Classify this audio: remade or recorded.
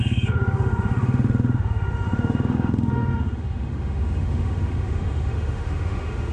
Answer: remade